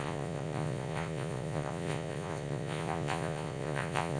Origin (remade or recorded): remade